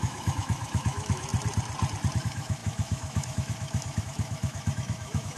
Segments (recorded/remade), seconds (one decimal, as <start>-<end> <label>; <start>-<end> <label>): 0.0-1.3 remade; 1.3-2.2 recorded; 2.2-5.4 remade